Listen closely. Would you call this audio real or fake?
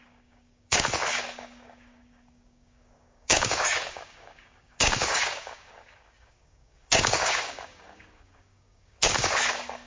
fake